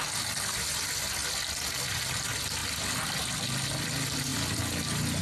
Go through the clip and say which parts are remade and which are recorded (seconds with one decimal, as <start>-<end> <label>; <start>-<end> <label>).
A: 0.0-5.2 recorded